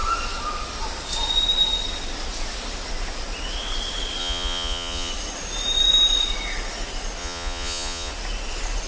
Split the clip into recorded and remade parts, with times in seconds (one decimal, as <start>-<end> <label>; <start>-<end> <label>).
0.0-4.2 recorded; 4.2-5.1 remade; 5.1-7.2 recorded; 7.2-8.1 remade; 8.1-8.9 recorded